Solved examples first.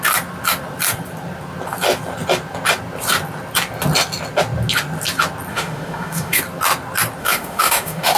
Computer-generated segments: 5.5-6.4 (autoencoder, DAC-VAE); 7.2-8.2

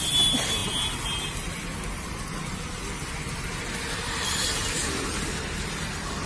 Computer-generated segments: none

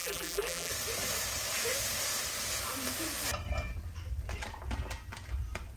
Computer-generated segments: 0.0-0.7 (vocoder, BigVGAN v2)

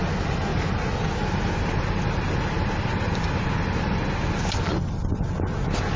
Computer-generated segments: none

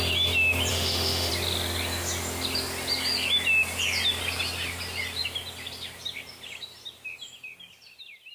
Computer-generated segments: 0.7-1.3 (autoencoder, DAC-VAE)

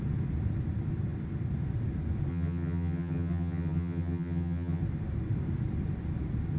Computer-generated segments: 2.3-4.8 (vocoder, HiFi-GAN)

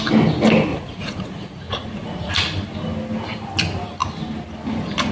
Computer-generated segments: 0.7-2.3 (vocoder, Vocos)

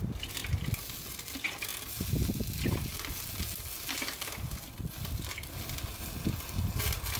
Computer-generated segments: none